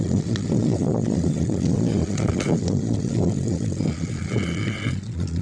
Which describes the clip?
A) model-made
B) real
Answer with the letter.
A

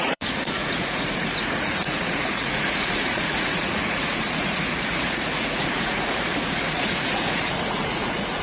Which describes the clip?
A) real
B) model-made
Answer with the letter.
B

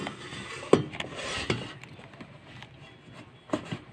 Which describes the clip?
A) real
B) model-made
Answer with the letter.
A